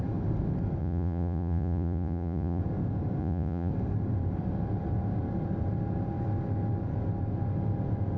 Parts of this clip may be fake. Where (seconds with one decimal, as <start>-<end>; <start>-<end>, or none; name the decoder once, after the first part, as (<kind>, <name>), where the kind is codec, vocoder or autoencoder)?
0.8-2.6 (vocoder, Vocos); 3.2-3.7